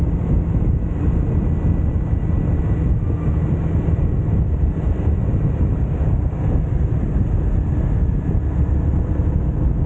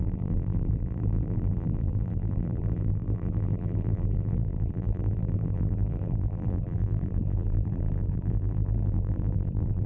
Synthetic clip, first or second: second